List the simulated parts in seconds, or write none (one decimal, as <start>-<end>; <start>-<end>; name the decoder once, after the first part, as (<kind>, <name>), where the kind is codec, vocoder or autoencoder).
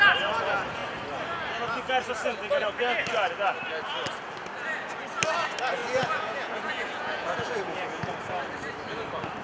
5.8-8.1 (vocoder, Vocos)